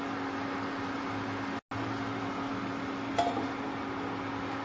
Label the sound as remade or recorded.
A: recorded